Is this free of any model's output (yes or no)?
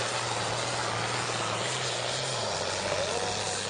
yes